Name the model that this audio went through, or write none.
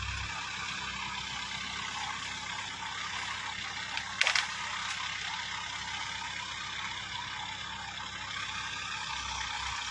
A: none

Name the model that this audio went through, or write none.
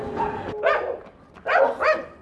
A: none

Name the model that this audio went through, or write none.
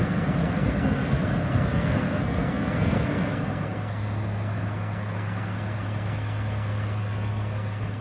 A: codec, SNAC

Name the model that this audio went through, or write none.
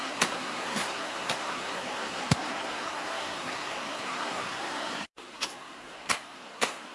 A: codec, SNAC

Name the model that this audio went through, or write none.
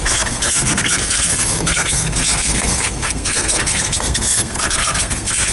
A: codec, SNAC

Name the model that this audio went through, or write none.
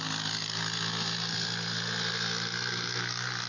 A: none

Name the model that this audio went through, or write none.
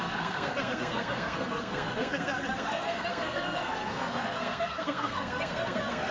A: codec, SNAC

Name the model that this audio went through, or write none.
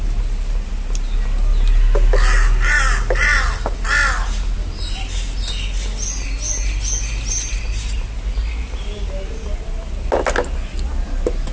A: none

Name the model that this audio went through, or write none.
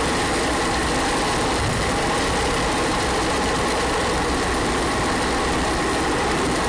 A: none